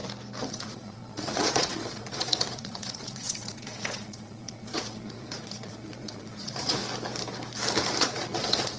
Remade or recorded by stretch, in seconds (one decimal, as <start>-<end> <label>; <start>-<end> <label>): 0.0-0.5 recorded; 0.5-6.8 remade; 6.8-8.0 recorded; 8.0-8.8 remade